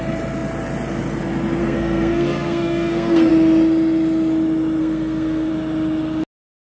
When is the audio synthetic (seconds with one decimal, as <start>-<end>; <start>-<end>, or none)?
1.6-3.3; 4.8-5.5